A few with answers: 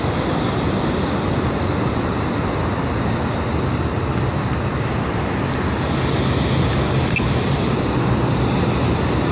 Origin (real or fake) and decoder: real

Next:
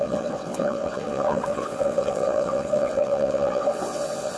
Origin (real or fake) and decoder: fake, vocoder, WaveNeXt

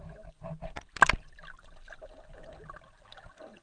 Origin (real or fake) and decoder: real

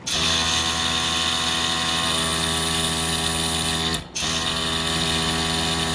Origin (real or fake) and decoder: real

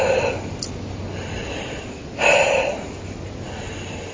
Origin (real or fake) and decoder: real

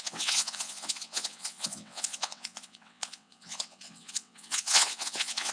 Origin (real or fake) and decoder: fake, vocoder, WaveNeXt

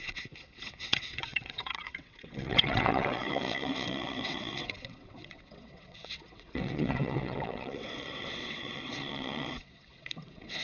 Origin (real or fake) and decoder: fake, vocoder, WaveNeXt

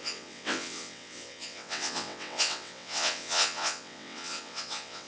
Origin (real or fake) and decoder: fake, vocoder, WaveNeXt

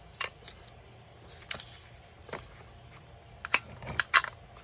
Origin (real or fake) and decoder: real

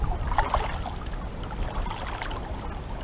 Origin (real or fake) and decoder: real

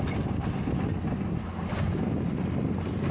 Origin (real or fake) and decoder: real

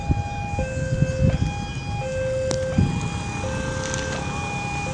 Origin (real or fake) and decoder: real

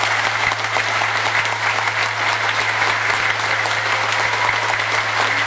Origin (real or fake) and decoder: real